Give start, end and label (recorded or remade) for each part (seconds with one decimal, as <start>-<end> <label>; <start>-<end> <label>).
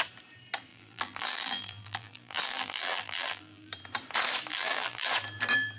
0.0-0.7 recorded; 0.7-3.7 remade; 3.7-4.5 recorded; 4.5-5.1 remade; 5.1-5.8 recorded